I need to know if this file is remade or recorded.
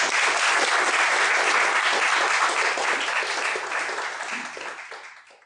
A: recorded